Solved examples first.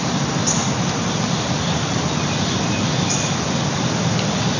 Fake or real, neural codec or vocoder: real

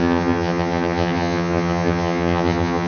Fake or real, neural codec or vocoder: fake, vocoder, HiFi-GAN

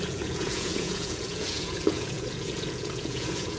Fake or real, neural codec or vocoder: fake, vocoder, Vocos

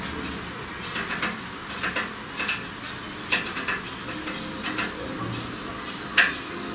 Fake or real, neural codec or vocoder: real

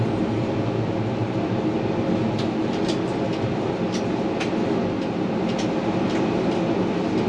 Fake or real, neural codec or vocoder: real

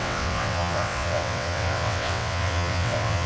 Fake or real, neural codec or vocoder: fake, vocoder, WaveNeXt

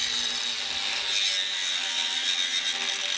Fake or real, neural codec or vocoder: real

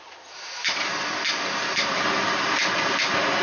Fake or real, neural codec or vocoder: real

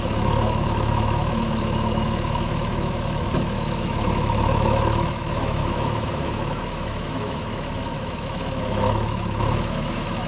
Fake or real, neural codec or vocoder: fake, autoencoder, DAC-VAE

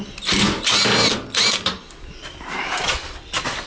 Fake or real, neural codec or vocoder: real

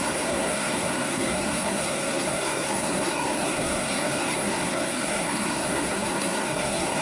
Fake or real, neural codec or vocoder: fake, codec, SNAC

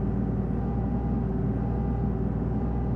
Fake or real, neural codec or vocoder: real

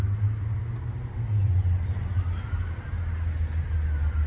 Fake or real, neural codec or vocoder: real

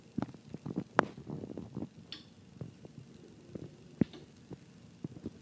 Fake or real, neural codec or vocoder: real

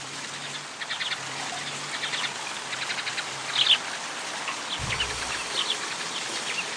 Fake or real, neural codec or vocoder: real